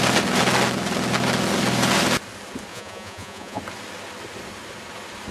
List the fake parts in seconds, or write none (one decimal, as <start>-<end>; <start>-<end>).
2.7-3.6